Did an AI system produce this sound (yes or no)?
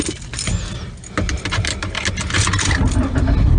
no